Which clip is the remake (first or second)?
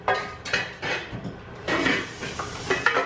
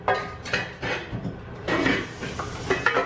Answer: first